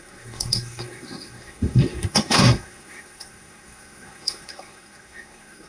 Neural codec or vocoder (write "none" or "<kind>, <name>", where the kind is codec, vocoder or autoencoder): codec, SNAC